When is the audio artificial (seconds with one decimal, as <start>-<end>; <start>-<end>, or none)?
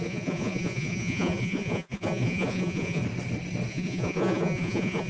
0.0-3.0; 3.7-5.1